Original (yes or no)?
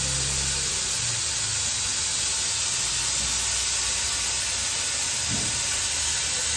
yes